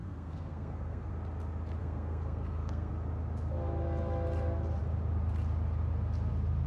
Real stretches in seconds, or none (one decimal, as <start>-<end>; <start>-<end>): 1.1-1.8; 2.9-6.7